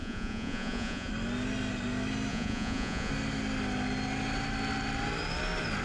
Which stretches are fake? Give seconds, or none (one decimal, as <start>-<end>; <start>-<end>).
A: 0.0-1.1; 2.3-3.1